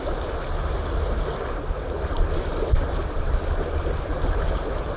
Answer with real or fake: real